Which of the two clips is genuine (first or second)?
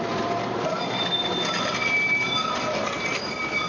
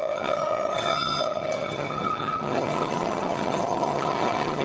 first